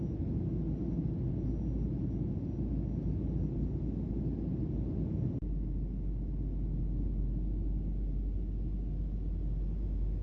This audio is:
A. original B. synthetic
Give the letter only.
A